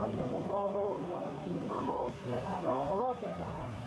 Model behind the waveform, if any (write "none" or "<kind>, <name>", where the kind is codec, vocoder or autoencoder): codec, SNAC